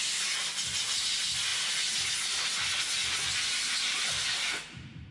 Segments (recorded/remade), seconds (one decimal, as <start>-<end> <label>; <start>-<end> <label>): 0.0-5.1 recorded

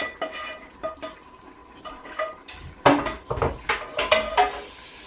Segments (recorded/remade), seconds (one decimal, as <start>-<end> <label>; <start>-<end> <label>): 0.0-5.1 recorded